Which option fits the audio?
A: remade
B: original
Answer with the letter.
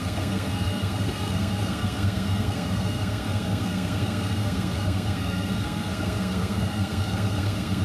A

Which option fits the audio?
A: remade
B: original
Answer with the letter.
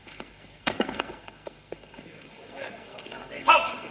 A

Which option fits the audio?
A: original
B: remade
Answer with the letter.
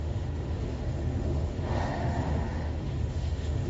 B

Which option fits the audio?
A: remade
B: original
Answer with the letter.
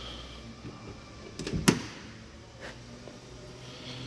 B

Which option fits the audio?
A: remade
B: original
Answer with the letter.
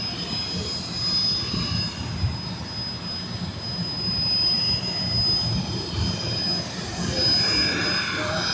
B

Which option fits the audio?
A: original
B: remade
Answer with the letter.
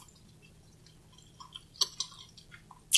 A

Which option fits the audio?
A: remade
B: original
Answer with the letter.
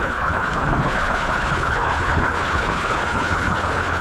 A